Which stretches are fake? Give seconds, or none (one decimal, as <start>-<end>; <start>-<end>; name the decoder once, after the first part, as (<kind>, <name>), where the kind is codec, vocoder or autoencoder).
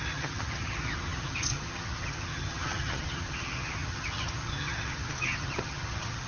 0.0-6.3 (vocoder, HiFi-GAN)